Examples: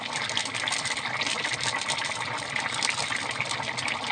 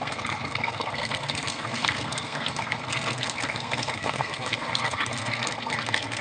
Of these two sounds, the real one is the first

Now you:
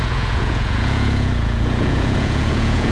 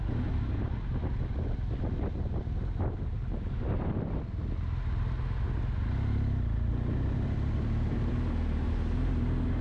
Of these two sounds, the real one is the second